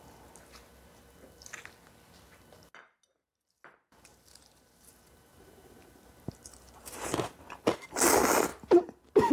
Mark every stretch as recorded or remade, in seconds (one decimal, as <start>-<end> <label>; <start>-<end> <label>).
0.0-4.1 recorded; 4.1-7.4 remade; 7.4-8.5 recorded; 8.5-9.3 remade